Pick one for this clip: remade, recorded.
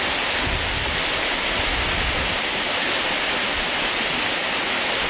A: recorded